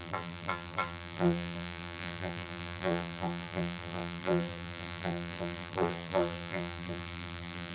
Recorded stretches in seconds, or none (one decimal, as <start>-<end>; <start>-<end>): none